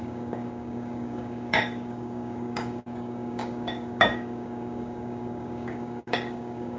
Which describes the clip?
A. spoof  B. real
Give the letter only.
A